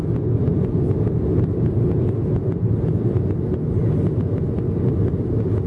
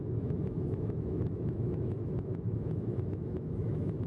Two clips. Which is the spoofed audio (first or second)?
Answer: second